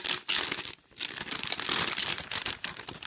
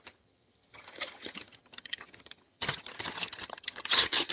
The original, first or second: first